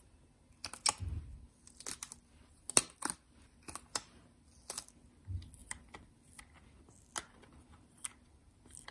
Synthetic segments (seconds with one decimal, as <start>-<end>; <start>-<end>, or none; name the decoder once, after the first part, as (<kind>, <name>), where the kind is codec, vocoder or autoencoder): 5.6-6.4 (vocoder, BigVGAN v2)